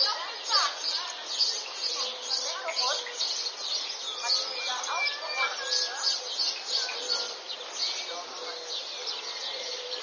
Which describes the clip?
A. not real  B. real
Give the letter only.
B